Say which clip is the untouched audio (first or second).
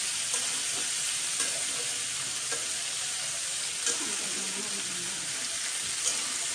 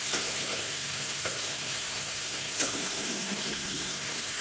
first